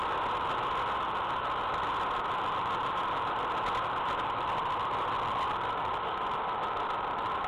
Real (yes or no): yes